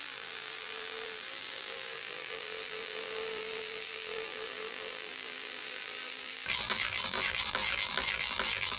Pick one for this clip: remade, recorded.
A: remade